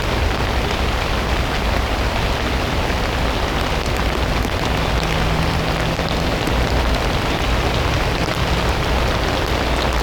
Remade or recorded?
recorded